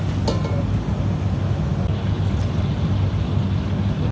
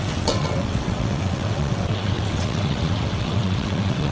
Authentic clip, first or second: first